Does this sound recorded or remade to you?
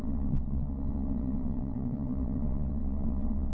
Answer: remade